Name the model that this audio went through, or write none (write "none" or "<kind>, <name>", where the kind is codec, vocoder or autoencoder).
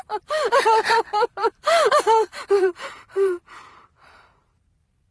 vocoder, BigVGAN v2